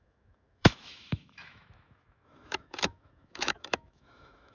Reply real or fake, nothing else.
fake